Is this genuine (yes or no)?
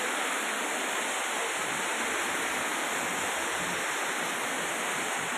yes